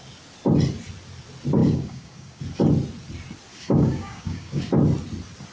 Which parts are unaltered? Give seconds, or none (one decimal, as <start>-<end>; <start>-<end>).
0.0-1.6; 2.4-3.5; 4.7-5.5